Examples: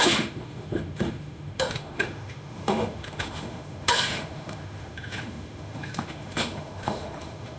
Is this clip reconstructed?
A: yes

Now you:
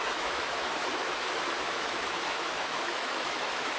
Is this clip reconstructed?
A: yes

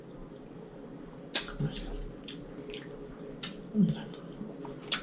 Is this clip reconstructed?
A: no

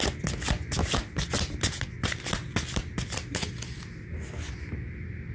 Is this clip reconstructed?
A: no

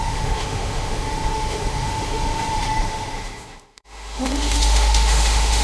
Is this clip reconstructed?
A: yes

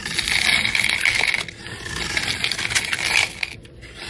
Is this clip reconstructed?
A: no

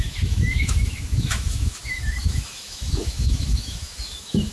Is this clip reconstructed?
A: yes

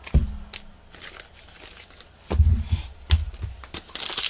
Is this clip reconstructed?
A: no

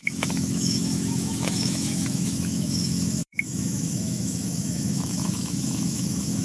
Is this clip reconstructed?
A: yes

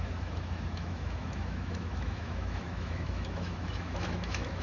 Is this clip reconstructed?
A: yes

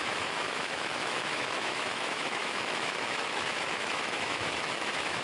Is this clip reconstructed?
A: yes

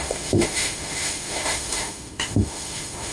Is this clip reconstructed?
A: yes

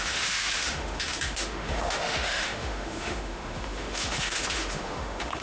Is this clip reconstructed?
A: yes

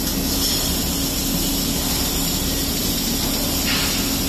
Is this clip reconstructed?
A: no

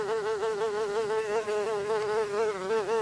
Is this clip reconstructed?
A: yes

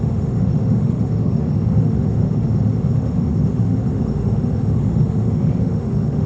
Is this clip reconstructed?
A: yes